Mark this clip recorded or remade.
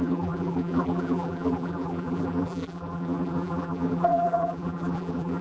remade